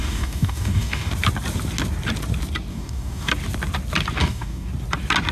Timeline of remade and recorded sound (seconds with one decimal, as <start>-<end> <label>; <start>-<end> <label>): 0.0-1.1 remade; 1.1-2.7 recorded; 2.7-3.3 remade; 3.3-4.2 recorded; 4.2-4.7 remade; 4.7-5.3 recorded